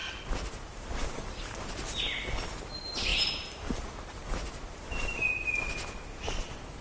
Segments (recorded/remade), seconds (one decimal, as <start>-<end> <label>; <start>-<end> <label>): 0.0-6.8 recorded